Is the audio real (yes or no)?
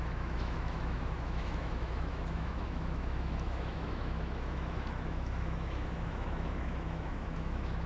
no